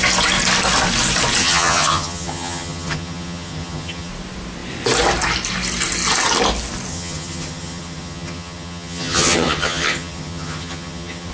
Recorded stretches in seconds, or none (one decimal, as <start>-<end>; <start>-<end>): 0.0-1.4; 4.1-6.9